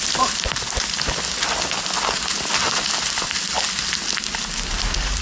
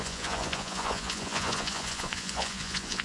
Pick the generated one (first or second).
second